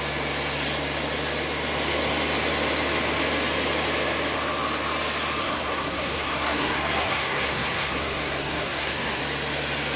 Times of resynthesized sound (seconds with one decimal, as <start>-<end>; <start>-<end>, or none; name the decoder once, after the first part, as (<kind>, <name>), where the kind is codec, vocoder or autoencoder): 5.4-9.2 (codec, SNAC)